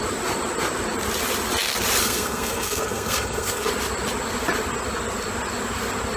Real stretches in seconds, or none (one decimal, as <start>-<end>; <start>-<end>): 0.0-2.0; 3.7-6.2